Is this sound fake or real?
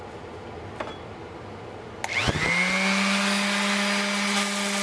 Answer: real